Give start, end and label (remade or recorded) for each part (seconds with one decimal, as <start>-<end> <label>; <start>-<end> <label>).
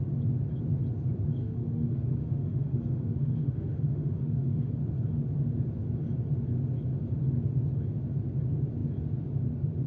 0.0-1.4 recorded; 1.4-4.7 remade; 4.7-9.9 recorded